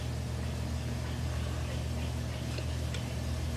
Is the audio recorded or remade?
recorded